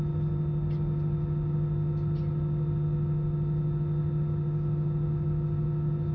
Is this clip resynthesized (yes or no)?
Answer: no